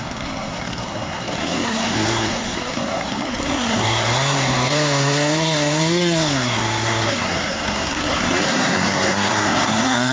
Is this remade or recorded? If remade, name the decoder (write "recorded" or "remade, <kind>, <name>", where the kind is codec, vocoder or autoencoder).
remade, codec, SNAC